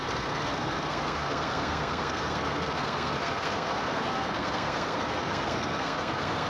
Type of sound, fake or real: fake